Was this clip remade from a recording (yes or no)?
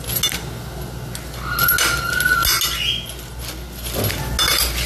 no